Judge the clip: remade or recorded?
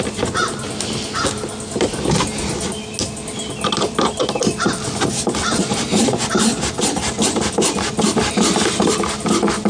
recorded